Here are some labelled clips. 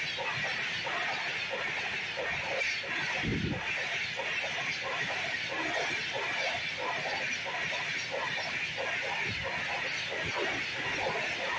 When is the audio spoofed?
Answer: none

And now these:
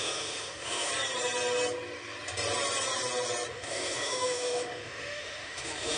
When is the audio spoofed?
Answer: 0.0-0.9 (autoencoder, DAC-VAE); 3.5-6.0

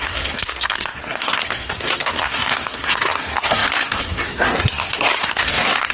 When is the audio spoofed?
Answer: 0.0-5.9 (codec, SNAC)

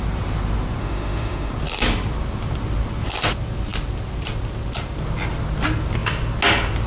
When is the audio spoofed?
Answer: 0.8-1.5 (autoencoder, DAC-VAE)

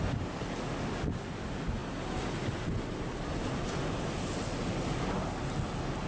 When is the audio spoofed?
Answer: none

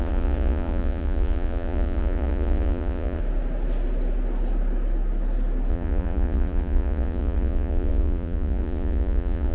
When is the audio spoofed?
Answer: 0.0-3.2 (vocoder, Vocos); 5.7-9.5